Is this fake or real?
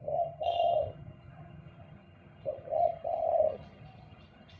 fake